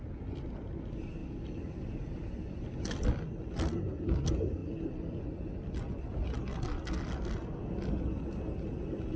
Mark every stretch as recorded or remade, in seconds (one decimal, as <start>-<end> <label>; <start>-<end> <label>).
0.0-9.2 recorded